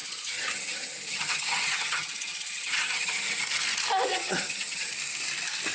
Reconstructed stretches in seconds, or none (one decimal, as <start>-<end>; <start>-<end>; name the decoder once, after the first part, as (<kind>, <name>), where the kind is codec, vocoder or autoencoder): 0.0-3.4 (vocoder, HiFi-GAN); 4.1-4.9